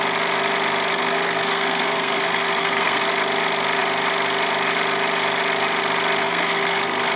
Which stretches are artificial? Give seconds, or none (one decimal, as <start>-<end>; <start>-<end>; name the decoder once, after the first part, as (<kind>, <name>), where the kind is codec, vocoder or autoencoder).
0.9-3.1 (codec, SNAC); 6.2-7.2